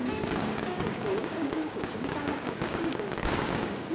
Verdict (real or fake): fake